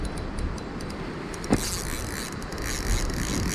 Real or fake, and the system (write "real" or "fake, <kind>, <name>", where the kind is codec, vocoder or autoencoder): real